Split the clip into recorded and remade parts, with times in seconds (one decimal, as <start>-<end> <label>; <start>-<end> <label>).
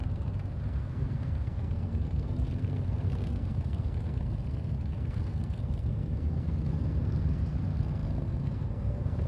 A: 0.0-9.3 remade